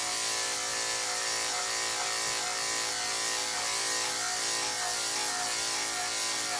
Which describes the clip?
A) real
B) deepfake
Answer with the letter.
A